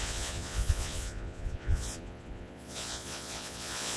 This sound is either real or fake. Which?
fake